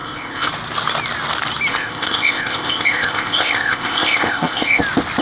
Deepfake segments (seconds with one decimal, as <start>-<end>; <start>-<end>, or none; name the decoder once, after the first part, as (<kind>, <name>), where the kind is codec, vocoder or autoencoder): 0.0-0.5 (codec, ZipCodec); 1.7-4.8

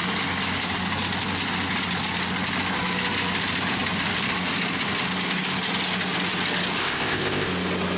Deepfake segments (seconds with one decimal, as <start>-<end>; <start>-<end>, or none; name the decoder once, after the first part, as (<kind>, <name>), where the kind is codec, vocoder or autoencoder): 6.8-7.5 (codec, ZipCodec)